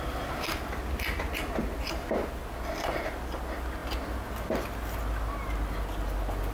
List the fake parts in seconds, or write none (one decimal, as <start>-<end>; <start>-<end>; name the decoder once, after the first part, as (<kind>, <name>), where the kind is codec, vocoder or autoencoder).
none